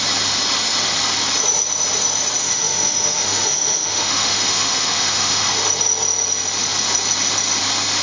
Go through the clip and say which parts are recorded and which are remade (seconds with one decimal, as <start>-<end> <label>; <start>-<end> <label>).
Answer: 0.0-2.4 recorded; 2.4-5.5 remade; 5.5-8.0 recorded

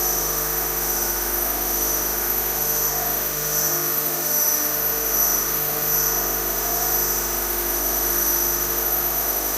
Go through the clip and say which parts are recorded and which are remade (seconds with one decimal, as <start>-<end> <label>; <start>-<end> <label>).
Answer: 0.0-9.6 remade